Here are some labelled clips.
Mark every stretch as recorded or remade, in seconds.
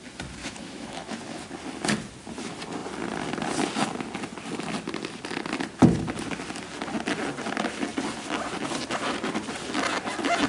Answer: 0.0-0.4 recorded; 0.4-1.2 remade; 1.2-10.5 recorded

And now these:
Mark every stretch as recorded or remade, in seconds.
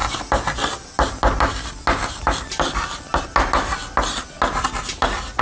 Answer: 0.0-5.4 recorded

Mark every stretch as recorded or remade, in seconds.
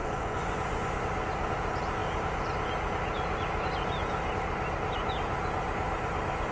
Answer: 0.0-0.9 remade; 0.9-6.5 recorded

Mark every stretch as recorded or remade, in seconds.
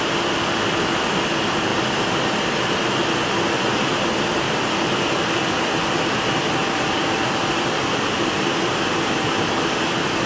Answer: 0.0-6.6 recorded; 6.6-8.7 remade; 8.7-10.3 recorded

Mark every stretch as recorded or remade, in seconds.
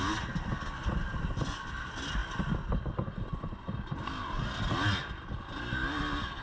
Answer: 0.0-6.4 recorded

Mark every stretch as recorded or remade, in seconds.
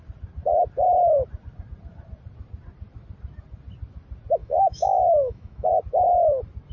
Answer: 0.0-4.4 recorded; 4.4-5.7 remade; 5.7-6.7 recorded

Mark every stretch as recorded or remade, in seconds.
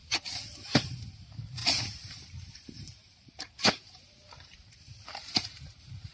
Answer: 0.0-6.1 remade